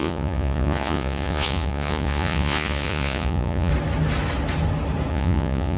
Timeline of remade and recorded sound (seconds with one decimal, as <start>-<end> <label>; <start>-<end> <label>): 0.0-3.7 remade; 3.7-5.1 recorded; 5.1-5.8 remade